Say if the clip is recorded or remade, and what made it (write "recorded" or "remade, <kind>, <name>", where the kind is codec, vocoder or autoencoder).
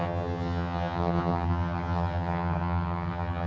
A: remade, vocoder, HiFi-GAN